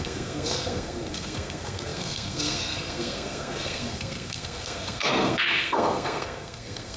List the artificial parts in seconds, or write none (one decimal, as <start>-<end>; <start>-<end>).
0.0-7.0